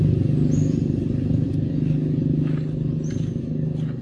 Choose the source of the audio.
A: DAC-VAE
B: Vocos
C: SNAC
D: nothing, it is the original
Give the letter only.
D